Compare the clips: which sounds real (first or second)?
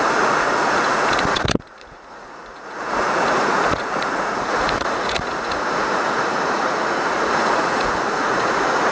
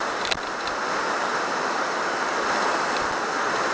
second